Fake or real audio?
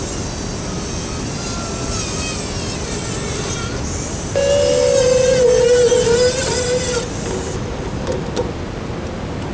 real